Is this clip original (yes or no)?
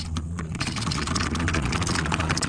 no